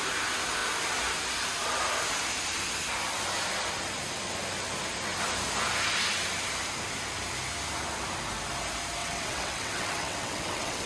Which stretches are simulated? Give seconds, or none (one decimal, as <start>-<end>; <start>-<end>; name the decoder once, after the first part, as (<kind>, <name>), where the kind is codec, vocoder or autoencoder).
9.0-10.9 (vocoder, WaveNeXt)